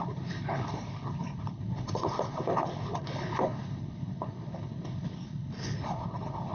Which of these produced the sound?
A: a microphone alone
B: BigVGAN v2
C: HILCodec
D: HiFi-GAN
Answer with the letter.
C